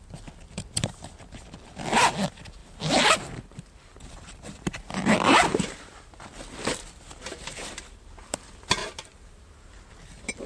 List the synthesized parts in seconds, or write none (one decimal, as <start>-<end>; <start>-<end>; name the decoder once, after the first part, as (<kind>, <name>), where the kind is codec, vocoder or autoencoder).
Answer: 2.6-6.0 (vocoder, BigVGAN v2); 8.8-9.9